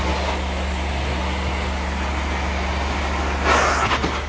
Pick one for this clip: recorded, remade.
recorded